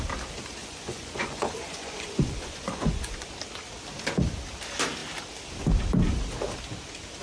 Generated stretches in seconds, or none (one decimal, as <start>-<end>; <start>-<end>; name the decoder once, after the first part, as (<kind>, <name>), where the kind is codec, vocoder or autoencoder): 0.6-3.3 (vocoder, Vocos)